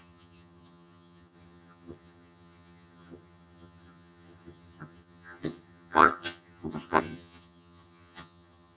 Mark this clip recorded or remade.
remade